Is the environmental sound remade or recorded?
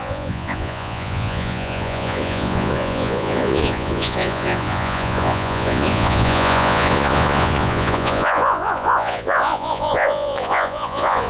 remade